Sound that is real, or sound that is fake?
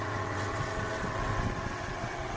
fake